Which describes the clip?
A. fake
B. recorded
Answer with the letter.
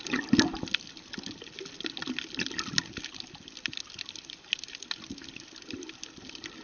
B